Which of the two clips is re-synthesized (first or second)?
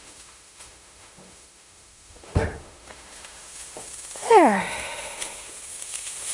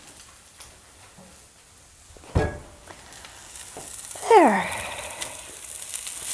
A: first